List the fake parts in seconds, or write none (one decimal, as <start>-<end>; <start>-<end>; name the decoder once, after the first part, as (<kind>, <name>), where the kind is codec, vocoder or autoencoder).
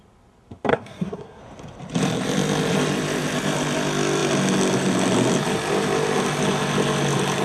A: 0.7-1.4 (codec, SNAC)